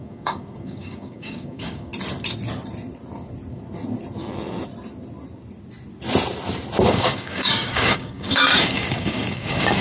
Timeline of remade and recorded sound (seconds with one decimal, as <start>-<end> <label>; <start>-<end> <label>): 0.0-1.9 remade; 1.9-6.9 recorded; 6.9-9.8 remade